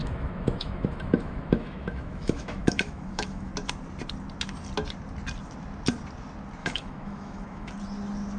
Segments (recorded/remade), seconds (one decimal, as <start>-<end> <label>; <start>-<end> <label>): 0.0-3.5 remade; 3.5-6.6 recorded; 6.6-7.7 remade; 7.7-8.4 recorded